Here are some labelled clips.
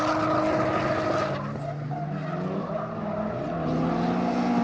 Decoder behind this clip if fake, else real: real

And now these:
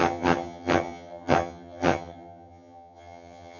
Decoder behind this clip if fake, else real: fake, vocoder, HiFi-GAN